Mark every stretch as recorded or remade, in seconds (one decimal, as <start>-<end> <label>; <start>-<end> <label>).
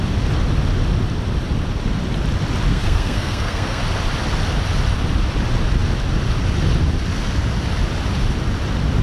0.0-2.7 recorded; 2.7-3.8 remade; 3.8-9.0 recorded